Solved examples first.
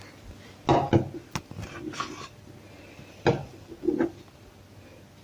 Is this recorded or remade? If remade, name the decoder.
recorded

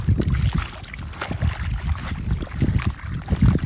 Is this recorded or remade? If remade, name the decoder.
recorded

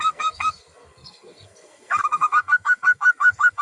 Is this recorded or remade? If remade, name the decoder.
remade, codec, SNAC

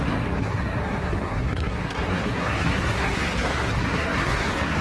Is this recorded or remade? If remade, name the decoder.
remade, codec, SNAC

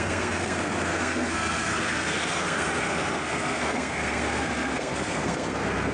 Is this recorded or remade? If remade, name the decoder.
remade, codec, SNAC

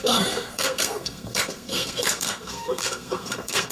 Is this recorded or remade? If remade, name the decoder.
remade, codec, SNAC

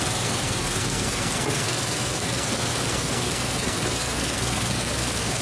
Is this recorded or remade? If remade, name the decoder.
remade, codec, SNAC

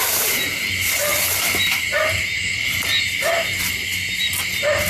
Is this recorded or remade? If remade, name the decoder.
recorded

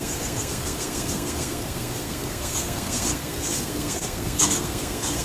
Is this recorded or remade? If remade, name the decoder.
remade, codec, SNAC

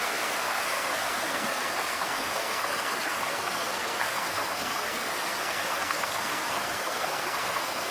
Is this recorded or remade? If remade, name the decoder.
remade, codec, SNAC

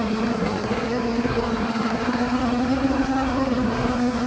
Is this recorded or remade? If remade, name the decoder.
remade, codec, SNAC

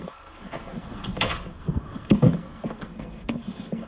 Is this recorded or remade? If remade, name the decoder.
remade, codec, SNAC